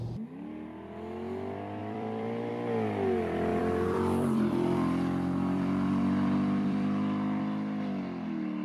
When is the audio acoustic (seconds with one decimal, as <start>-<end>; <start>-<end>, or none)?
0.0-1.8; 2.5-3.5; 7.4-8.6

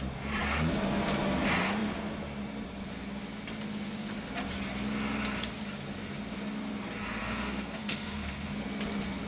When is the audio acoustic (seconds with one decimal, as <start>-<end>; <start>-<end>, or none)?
0.0-7.2; 8.5-9.3

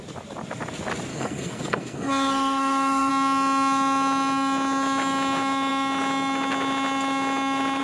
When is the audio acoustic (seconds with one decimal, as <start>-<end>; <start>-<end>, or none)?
0.0-1.1; 3.1-7.8

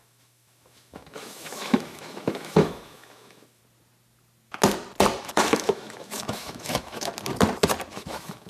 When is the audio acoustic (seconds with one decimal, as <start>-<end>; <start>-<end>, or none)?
3.6-5.2; 7.1-7.9